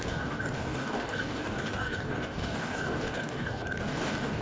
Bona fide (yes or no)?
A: no